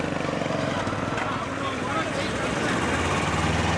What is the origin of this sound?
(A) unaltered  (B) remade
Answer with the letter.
A